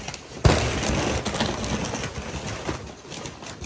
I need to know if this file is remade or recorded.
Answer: recorded